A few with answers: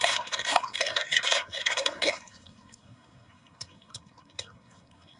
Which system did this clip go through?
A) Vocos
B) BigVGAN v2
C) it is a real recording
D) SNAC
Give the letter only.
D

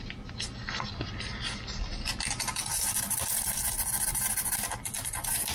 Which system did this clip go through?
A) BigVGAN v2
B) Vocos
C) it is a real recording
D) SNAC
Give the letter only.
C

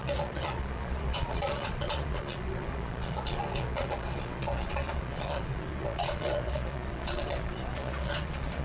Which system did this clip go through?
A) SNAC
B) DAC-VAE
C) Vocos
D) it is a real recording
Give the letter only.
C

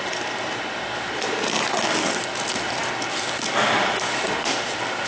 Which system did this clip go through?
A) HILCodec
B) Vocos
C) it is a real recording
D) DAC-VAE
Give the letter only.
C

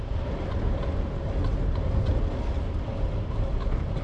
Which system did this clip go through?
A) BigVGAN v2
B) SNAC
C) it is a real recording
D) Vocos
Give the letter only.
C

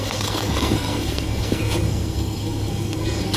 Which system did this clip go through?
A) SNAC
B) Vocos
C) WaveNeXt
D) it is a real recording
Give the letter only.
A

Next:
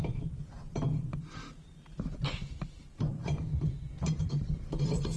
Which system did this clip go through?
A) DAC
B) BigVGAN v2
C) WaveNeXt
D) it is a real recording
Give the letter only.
B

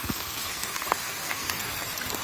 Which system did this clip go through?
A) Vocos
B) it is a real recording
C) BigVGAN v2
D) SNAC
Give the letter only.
D